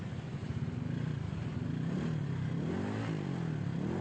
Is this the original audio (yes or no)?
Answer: yes